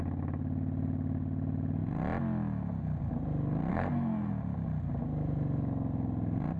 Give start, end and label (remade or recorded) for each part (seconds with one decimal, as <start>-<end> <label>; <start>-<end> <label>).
0.0-3.7 recorded; 3.7-4.3 remade; 4.3-6.6 recorded